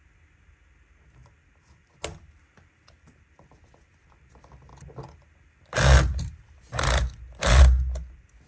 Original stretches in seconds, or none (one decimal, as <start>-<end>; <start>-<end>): 0.0-8.5

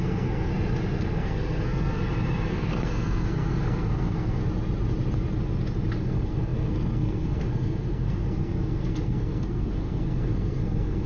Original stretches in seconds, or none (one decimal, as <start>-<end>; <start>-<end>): 0.5-1.0; 2.0-2.5; 4.4-6.0

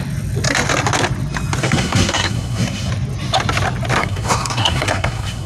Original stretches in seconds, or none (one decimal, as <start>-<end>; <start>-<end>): 0.0-1.6; 2.9-4.0

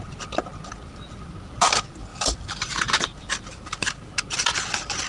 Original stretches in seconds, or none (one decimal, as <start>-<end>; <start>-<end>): 0.0-5.1

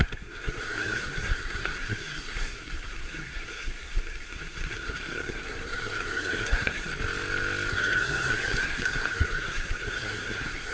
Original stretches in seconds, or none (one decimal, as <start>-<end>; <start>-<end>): 6.9-7.7

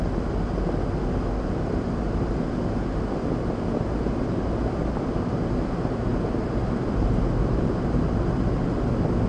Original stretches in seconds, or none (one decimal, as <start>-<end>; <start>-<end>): 0.0-9.3

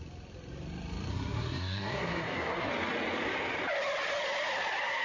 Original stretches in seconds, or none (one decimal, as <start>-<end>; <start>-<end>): 0.0-1.1; 2.7-5.0

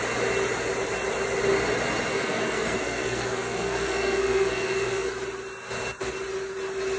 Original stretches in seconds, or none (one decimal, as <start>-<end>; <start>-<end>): 0.0-2.1; 5.1-7.0